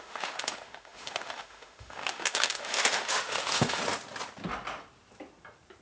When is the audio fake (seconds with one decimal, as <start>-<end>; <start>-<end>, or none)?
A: 0.0-3.8